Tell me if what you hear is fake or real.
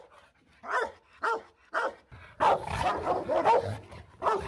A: real